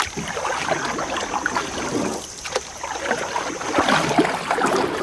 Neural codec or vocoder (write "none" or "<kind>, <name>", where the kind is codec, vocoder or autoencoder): none